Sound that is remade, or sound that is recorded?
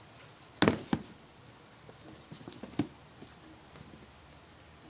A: recorded